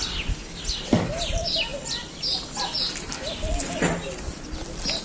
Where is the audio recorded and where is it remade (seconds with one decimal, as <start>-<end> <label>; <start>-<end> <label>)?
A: 0.0-5.0 recorded